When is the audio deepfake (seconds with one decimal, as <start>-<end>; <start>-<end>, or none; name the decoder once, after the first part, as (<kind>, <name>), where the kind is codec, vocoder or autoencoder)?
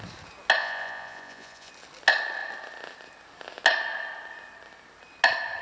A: 0.6-1.7 (vocoder, Vocos)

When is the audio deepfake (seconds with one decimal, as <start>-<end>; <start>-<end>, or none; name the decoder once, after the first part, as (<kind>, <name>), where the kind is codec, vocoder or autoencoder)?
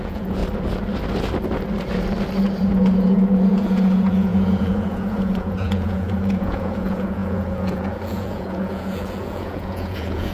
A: 0.0-0.4 (vocoder, Vocos); 2.6-10.3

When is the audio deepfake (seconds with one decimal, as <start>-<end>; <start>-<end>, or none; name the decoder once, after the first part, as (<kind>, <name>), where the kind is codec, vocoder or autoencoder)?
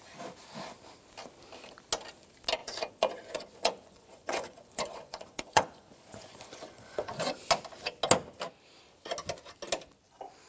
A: 2.6-7.5 (vocoder, Vocos)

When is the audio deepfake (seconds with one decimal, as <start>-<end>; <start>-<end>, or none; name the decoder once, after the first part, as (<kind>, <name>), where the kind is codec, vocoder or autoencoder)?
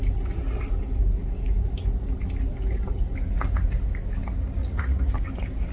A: 4.6-5.1 (vocoder, Vocos)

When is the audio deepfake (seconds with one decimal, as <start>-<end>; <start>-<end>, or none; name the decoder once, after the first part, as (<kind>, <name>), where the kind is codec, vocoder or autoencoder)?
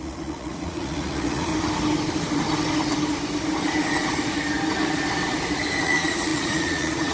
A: 0.0-1.5 (vocoder, Vocos); 5.8-7.1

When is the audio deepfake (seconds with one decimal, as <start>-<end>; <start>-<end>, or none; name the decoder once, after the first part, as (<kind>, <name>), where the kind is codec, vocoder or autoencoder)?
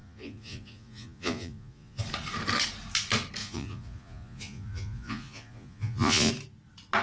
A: 0.0-2.0 (vocoder, Vocos); 3.4-6.3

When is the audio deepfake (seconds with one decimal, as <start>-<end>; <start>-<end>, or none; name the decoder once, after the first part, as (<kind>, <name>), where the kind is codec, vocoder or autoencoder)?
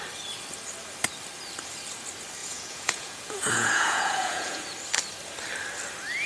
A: 2.4-4.6 (vocoder, Vocos)